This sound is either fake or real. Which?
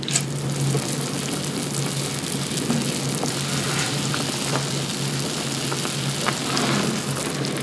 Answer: real